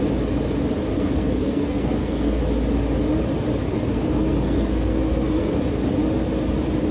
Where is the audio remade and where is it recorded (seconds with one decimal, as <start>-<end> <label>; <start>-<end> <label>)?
0.0-0.9 recorded; 0.9-2.4 remade; 2.4-3.7 recorded; 3.7-5.6 remade; 5.6-6.9 recorded